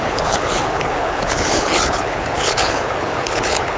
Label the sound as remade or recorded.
remade